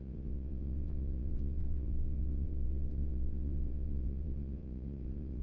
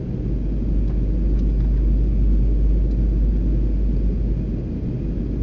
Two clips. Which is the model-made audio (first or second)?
first